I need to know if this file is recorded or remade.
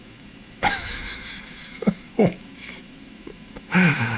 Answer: remade